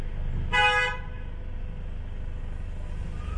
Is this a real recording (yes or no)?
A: yes